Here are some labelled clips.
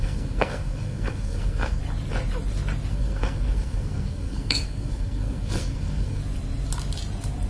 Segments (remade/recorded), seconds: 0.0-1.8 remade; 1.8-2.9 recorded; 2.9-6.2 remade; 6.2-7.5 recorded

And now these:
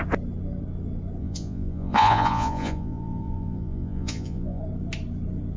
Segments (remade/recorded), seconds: 0.0-1.2 recorded; 1.2-4.6 remade; 4.6-5.6 recorded

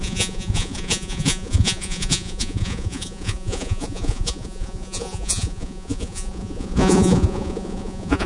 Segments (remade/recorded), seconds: 0.0-8.3 remade